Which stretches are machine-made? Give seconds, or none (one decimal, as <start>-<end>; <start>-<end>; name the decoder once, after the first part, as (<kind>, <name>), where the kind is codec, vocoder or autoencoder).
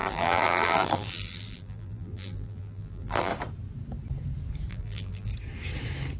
0.0-3.3 (vocoder, BigVGAN v2); 4.7-5.3